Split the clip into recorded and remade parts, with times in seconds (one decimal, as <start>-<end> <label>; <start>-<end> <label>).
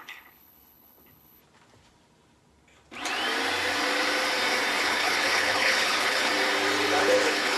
0.0-1.4 remade; 1.4-4.8 recorded; 4.8-6.3 remade; 6.3-7.0 recorded; 7.0-7.6 remade